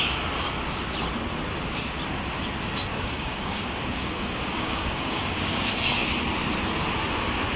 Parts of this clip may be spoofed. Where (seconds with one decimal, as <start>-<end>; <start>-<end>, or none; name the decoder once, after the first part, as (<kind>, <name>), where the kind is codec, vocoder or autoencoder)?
2.9-5.6 (codec, DAC)